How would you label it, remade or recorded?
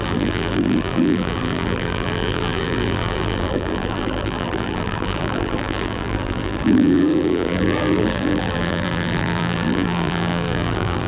remade